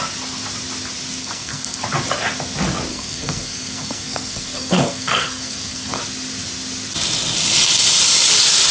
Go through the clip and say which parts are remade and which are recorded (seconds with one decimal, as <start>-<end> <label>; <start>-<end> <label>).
0.0-1.2 recorded; 1.2-1.8 remade; 1.8-2.9 recorded; 2.9-6.0 remade; 6.0-8.7 recorded